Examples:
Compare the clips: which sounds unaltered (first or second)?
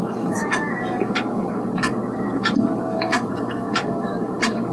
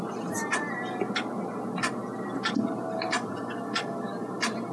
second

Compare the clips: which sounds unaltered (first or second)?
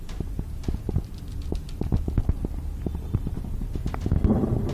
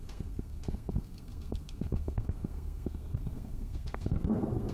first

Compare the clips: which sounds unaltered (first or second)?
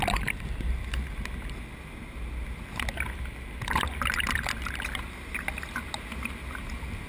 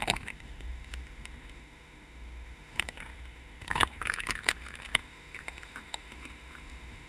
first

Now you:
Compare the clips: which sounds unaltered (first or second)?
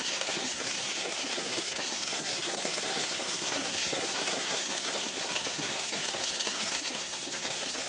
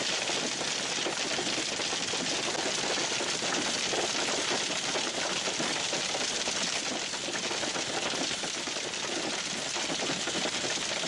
second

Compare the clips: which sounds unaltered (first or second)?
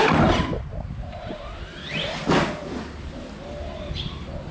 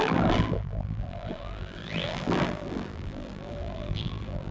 first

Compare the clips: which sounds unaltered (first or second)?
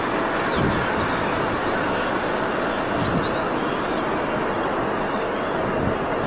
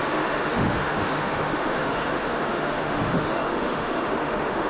first